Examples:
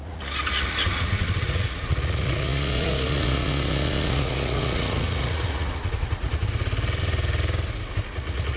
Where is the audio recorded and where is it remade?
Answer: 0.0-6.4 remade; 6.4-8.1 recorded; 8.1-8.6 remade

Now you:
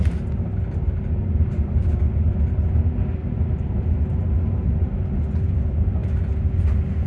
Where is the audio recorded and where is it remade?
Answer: 0.0-3.2 recorded; 3.2-5.2 remade; 5.2-7.1 recorded

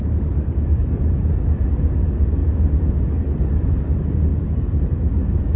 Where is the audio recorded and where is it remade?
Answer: 0.0-1.1 remade; 1.1-5.6 recorded

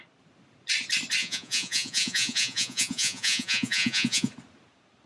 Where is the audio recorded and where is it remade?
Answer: 0.0-1.2 recorded; 1.2-4.3 remade; 4.3-5.1 recorded

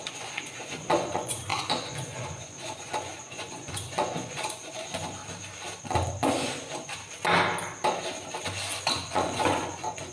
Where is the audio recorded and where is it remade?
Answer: 0.0-5.2 remade; 5.2-5.8 recorded; 5.8-7.0 remade; 7.0-8.9 recorded; 8.9-10.1 remade